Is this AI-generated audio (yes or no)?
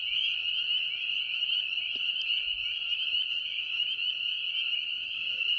no